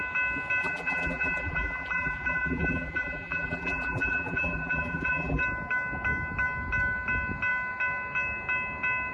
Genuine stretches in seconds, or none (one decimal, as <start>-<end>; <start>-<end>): 0.0-0.6; 5.4-9.1